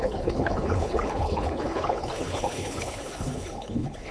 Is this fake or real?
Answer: fake